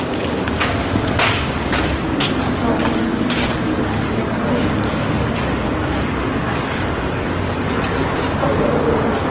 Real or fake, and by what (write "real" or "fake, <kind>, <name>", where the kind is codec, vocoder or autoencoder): fake, codec, DAC